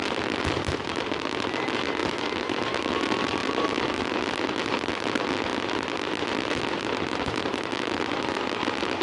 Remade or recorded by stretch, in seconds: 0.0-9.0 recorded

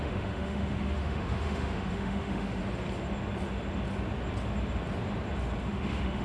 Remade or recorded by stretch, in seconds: 0.0-2.6 remade; 2.6-5.7 recorded; 5.7-6.2 remade

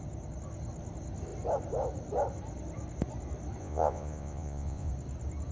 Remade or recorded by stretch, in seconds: 0.0-3.6 recorded; 3.6-4.9 remade; 4.9-5.5 recorded

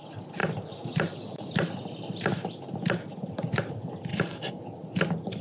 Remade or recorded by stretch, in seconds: 0.0-4.1 recorded; 4.1-4.6 remade; 4.6-5.4 recorded

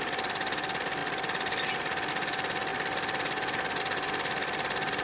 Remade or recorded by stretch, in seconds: 0.0-5.0 recorded

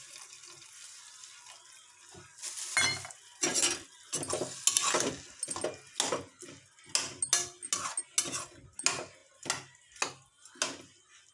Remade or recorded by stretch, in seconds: 0.0-11.3 recorded

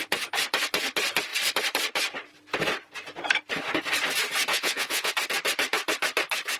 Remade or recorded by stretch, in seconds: 0.0-4.5 recorded; 4.5-5.1 remade; 5.1-6.6 recorded